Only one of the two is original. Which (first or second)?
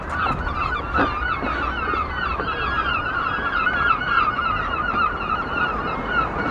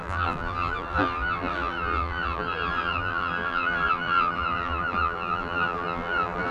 first